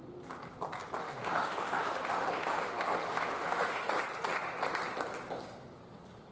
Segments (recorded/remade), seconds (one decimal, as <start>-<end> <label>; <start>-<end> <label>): 0.0-1.0 recorded; 1.0-3.9 remade; 3.9-6.3 recorded